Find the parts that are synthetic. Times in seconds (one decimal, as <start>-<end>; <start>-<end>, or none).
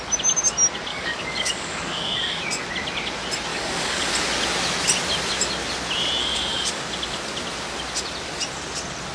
0.9-2.4; 3.5-4.1; 6.2-6.8